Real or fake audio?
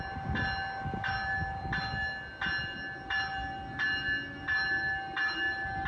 real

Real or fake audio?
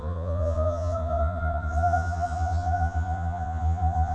fake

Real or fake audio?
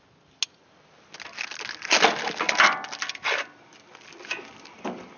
real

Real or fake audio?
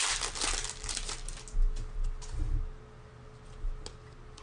real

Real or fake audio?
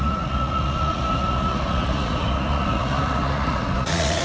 fake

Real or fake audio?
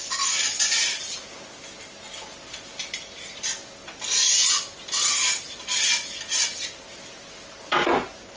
real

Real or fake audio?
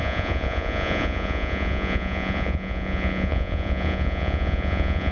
fake